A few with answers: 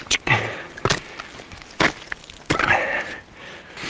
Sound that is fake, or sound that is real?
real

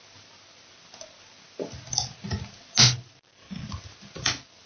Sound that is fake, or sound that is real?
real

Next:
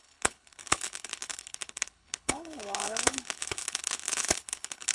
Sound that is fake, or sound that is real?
fake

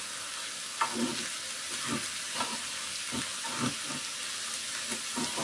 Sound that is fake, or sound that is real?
real